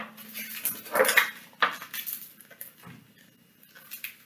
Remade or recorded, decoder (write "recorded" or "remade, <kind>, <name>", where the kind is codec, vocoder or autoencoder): recorded